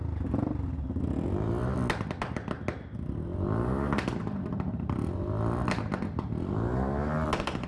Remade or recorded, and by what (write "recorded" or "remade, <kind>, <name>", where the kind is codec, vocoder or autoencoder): recorded